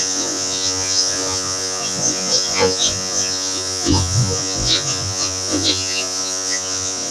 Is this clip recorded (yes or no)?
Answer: no